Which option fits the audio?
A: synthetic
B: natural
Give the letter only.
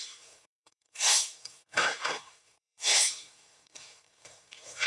A